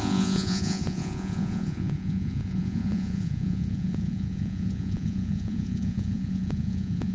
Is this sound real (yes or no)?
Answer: no